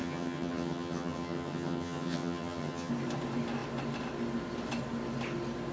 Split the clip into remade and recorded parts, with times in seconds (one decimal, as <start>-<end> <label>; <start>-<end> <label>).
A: 0.0-2.9 remade; 2.9-5.7 recorded